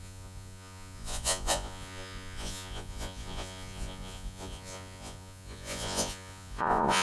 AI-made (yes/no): yes